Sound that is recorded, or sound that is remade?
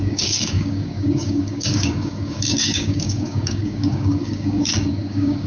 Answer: remade